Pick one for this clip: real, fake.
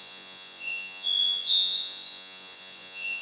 fake